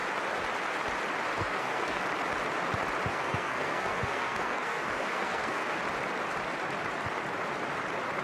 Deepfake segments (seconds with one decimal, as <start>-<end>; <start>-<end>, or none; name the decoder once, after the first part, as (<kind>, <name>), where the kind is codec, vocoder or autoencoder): 1.3-2.0 (codec, SNAC); 3.1-5.8